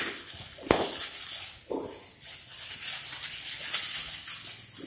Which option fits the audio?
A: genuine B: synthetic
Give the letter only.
A